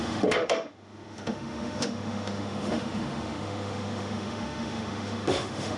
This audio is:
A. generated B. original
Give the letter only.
A